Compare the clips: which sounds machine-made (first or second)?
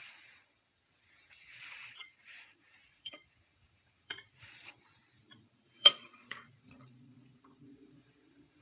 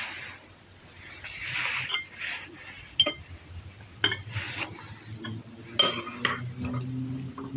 first